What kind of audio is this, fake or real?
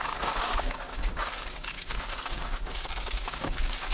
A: fake